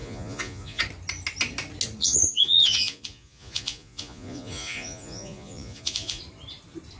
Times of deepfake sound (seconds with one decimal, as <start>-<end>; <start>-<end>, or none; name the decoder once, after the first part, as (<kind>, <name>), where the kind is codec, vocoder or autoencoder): 0.0-0.8 (vocoder, Vocos); 2.0-6.2